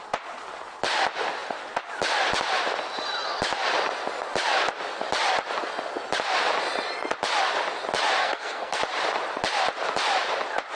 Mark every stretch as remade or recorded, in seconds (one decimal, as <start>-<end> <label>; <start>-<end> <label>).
0.0-8.2 recorded; 8.2-8.8 remade; 8.8-10.8 recorded